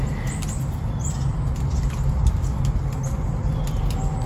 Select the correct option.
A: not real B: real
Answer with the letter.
B